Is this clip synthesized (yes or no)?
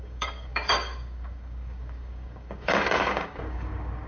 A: yes